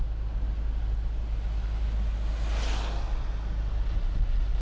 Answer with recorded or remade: recorded